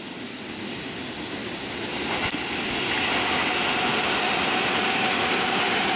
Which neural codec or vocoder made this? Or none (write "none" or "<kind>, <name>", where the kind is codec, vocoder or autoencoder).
none